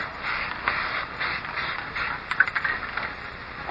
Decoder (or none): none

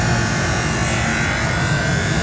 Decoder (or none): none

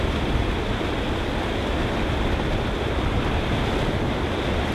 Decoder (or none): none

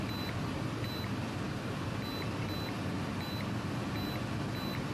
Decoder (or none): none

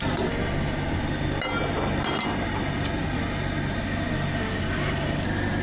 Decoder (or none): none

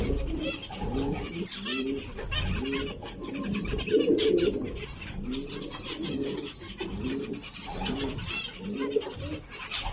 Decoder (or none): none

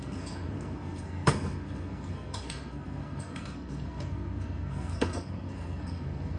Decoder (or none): codec, SNAC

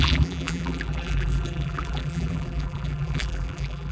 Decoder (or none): vocoder, BigVGAN v2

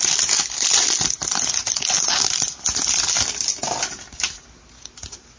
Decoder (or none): none